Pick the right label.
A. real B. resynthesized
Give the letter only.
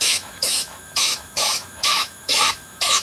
B